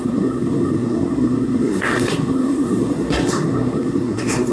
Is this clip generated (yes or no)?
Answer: yes